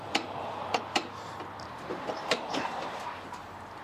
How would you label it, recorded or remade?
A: remade